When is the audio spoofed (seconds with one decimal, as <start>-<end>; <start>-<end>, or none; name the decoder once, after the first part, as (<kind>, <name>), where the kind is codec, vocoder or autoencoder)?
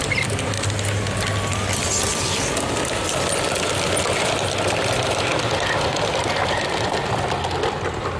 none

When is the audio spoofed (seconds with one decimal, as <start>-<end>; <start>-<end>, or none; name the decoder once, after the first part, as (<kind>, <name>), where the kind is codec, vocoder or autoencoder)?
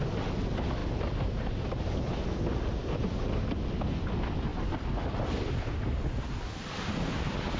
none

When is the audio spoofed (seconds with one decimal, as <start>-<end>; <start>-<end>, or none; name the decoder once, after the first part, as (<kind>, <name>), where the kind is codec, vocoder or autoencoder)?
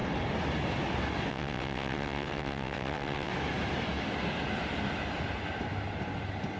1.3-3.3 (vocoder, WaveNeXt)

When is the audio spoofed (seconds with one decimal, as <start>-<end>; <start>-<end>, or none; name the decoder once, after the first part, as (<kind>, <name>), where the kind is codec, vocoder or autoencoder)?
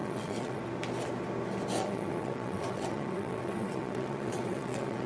0.0-0.6 (vocoder, WaveNeXt); 1.8-5.1